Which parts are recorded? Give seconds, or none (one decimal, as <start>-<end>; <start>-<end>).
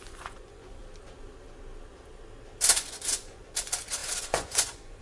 0.8-2.7